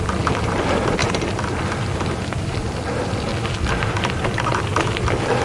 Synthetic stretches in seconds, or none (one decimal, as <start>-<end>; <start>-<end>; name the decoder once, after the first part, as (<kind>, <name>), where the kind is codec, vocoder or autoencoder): none